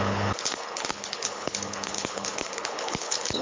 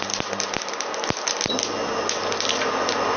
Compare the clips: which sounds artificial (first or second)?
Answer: first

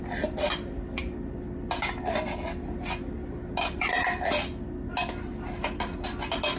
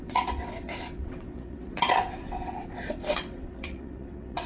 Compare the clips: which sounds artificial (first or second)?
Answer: second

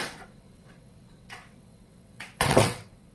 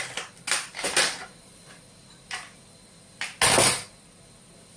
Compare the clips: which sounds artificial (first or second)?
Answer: first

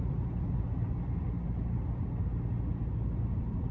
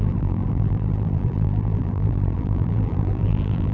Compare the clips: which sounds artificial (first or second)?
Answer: second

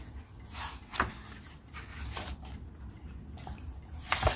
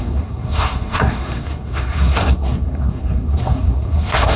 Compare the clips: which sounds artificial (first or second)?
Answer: second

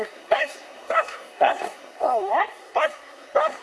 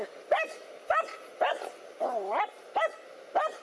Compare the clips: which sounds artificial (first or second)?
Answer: first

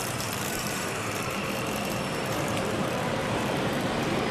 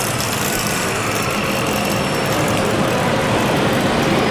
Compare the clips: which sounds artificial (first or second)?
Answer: first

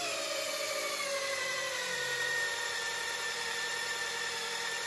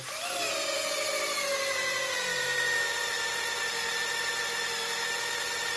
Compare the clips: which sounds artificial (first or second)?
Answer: first